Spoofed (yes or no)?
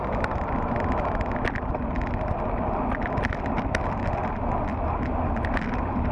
no